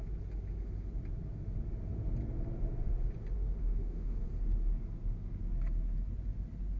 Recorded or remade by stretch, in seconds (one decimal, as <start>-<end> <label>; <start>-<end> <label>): 0.0-3.6 recorded; 3.6-4.2 remade; 4.2-6.8 recorded